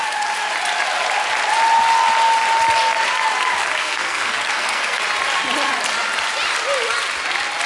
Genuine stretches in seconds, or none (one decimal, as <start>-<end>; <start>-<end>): 0.0-3.8; 5.0-7.7